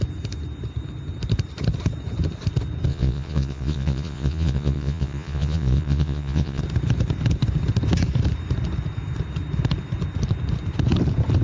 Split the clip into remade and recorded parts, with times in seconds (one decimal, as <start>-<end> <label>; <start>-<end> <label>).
0.0-2.9 recorded; 2.9-6.6 remade; 6.6-11.4 recorded